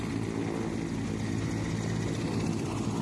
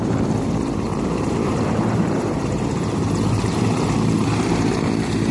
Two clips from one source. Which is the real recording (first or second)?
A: first